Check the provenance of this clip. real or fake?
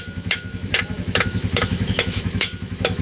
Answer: fake